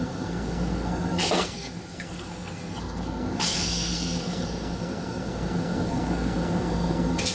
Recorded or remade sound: remade